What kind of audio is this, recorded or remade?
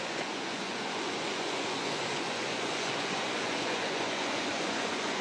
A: remade